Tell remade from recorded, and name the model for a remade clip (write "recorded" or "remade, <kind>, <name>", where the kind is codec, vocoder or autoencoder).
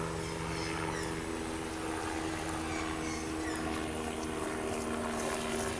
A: recorded